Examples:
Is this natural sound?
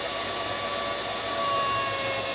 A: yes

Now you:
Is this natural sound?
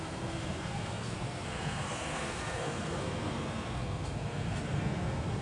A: no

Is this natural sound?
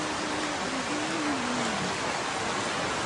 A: yes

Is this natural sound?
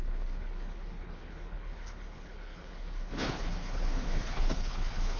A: no